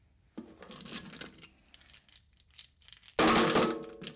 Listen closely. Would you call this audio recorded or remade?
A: recorded